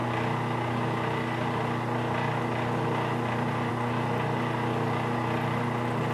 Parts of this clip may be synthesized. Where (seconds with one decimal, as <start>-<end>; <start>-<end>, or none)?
none